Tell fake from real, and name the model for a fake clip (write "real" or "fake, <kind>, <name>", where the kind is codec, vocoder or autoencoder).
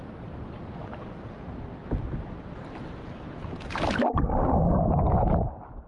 real